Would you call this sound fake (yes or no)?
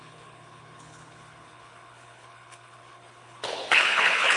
yes